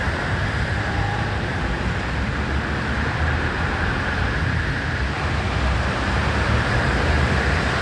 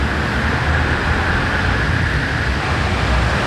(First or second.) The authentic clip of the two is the second